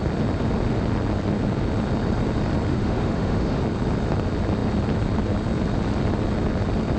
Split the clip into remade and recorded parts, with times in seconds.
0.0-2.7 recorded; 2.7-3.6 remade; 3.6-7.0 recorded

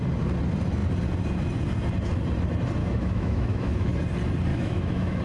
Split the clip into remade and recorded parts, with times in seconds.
0.0-2.8 recorded; 2.8-3.9 remade; 3.9-4.5 recorded; 4.5-5.2 remade

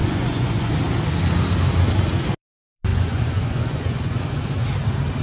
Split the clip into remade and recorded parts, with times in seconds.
0.0-0.7 remade; 0.7-2.9 recorded; 2.9-4.5 remade; 4.5-5.2 recorded

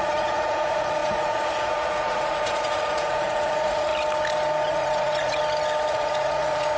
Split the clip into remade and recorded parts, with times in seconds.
0.0-3.9 remade; 3.9-4.7 recorded; 4.7-5.4 remade; 5.4-5.9 recorded; 5.9-6.8 remade

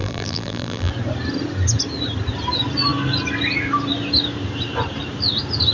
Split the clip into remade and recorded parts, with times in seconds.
0.0-0.9 remade; 0.9-5.7 recorded

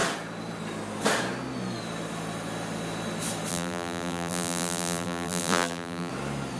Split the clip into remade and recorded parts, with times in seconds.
0.0-3.5 recorded; 3.5-6.1 remade; 6.1-6.6 recorded

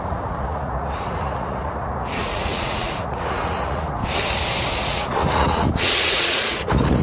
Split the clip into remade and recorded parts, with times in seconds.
0.0-4.0 remade; 4.0-4.8 recorded; 4.8-7.0 remade